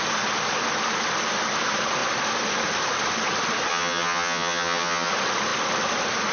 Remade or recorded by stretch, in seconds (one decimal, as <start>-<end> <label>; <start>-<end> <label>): 0.0-3.7 recorded; 3.7-5.1 remade; 5.1-6.3 recorded